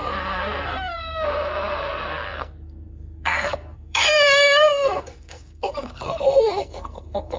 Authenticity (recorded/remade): remade